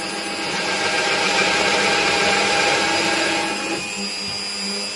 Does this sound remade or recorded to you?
recorded